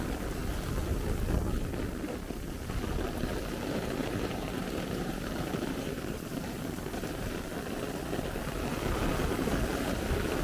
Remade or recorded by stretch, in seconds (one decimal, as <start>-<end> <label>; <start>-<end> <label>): 0.0-4.0 recorded; 4.0-6.8 remade; 6.8-10.4 recorded